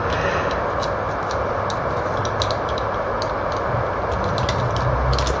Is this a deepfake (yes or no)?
no